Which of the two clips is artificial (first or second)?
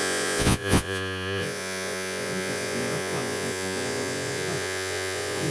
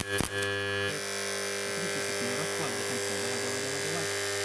first